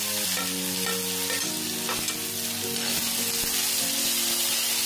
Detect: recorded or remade recorded